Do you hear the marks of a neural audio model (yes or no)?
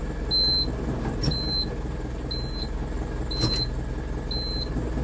no